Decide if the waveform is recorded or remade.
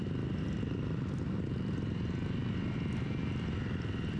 recorded